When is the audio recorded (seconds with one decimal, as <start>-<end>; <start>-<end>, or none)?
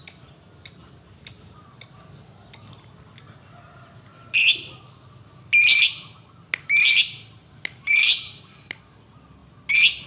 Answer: 0.0-10.1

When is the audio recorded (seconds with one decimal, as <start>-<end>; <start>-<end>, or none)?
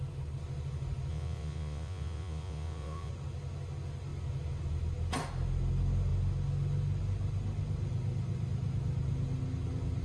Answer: 0.0-1.1; 3.1-10.0